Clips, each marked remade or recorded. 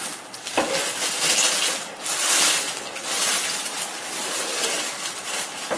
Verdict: recorded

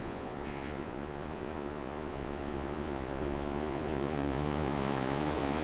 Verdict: remade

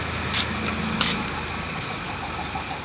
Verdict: recorded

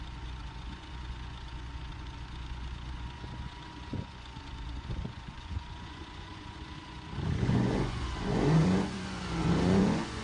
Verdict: remade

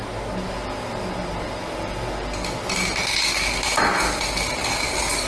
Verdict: recorded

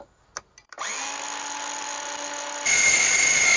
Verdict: recorded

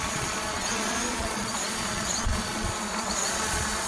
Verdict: remade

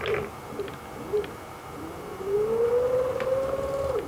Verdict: recorded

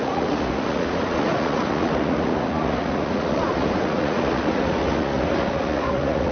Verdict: remade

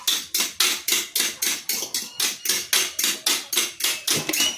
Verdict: recorded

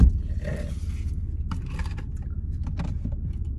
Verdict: recorded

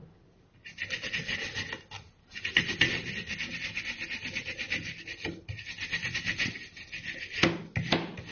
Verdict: recorded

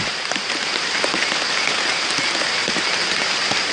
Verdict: recorded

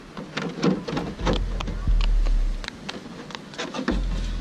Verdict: recorded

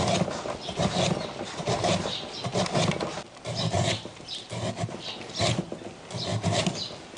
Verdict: recorded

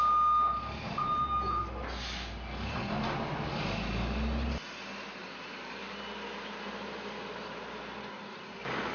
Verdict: recorded